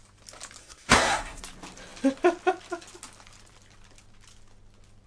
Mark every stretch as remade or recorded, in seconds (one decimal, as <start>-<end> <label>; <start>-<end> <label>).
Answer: 0.0-0.6 recorded; 0.6-1.4 remade; 1.4-5.1 recorded